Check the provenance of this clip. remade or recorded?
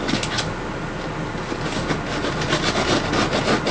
recorded